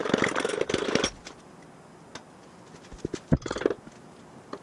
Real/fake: real